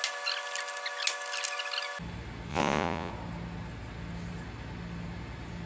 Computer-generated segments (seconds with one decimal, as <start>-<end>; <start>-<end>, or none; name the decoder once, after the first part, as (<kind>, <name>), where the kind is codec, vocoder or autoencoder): 2.5-3.1 (vocoder, Vocos)